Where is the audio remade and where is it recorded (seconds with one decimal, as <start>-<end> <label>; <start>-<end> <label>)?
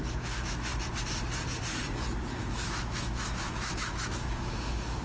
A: 0.0-0.7 remade; 0.7-2.3 recorded; 2.3-5.0 remade